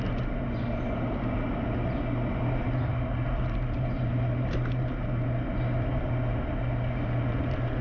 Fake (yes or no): no